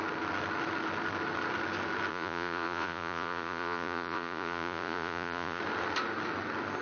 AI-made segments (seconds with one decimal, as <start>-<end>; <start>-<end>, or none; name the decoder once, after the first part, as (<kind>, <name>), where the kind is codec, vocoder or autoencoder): 2.1-5.6 (vocoder, Vocos)